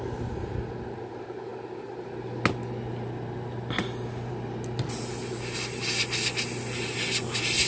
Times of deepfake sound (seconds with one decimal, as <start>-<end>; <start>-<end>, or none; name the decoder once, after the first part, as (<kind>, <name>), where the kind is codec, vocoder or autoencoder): none